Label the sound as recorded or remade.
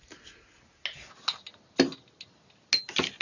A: recorded